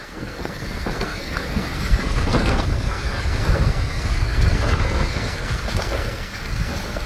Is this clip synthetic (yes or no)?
yes